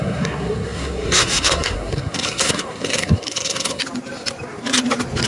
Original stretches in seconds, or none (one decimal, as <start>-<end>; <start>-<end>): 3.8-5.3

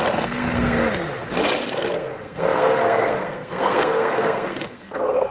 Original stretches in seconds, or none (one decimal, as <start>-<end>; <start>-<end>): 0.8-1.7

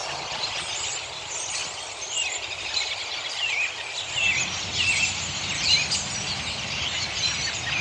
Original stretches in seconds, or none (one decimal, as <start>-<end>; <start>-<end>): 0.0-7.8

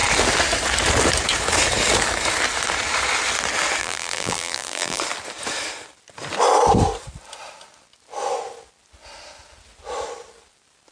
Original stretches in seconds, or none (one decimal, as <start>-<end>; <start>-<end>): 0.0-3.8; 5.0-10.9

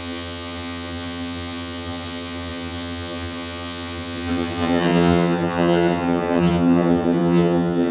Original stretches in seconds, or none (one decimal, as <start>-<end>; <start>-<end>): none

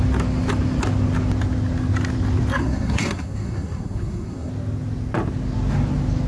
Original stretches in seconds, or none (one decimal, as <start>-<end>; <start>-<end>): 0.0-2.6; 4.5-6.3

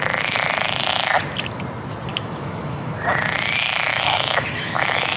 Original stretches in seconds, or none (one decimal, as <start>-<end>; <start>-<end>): 0.0-2.1; 2.9-3.9